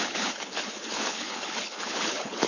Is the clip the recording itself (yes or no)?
no